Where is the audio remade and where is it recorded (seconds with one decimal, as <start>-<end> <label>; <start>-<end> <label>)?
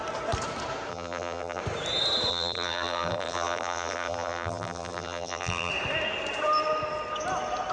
0.0-0.9 recorded; 0.9-1.6 remade; 1.6-2.3 recorded; 2.3-5.7 remade; 5.7-7.7 recorded